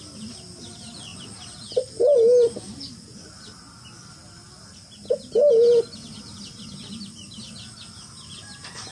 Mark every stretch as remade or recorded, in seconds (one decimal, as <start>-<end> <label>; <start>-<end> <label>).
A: 0.0-8.9 recorded